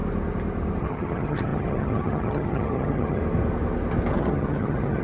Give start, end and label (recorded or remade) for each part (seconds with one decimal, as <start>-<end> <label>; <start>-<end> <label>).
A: 0.0-0.8 recorded; 0.8-3.2 remade; 3.2-4.2 recorded; 4.2-5.0 remade

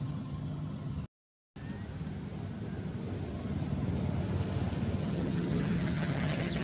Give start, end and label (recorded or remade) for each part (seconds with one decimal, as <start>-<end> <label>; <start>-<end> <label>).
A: 0.0-1.0 remade; 1.0-5.0 recorded; 5.0-6.6 remade

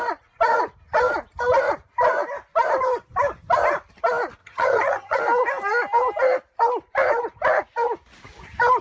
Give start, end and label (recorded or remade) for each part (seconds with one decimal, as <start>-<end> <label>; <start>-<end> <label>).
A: 0.0-4.4 recorded; 4.4-5.2 remade; 5.2-8.8 recorded

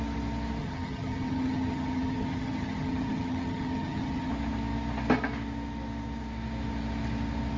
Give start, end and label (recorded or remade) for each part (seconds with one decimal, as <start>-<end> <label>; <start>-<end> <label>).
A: 0.0-0.6 recorded; 0.6-4.3 remade; 4.3-7.6 recorded

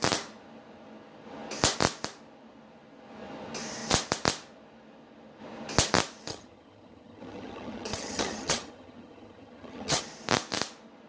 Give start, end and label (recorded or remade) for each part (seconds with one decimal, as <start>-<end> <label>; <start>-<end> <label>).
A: 0.0-6.3 recorded; 6.3-10.0 remade; 10.0-11.1 recorded

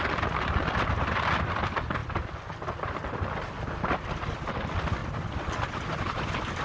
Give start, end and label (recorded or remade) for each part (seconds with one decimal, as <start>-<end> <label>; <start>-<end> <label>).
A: 0.0-6.6 recorded